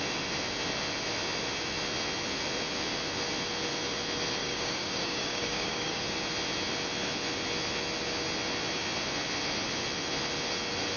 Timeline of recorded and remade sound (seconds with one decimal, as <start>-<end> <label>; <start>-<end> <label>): 0.0-4.4 recorded; 4.4-6.0 remade; 6.0-11.0 recorded